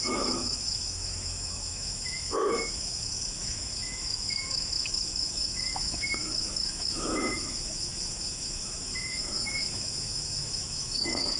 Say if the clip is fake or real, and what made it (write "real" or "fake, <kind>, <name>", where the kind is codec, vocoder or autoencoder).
fake, autoencoder, DAC-VAE